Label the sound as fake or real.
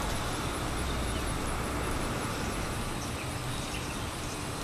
fake